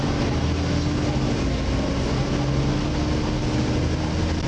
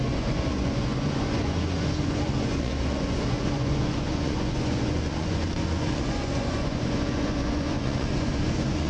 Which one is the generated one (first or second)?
second